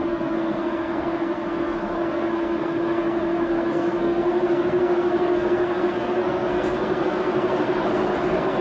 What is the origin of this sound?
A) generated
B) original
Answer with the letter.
A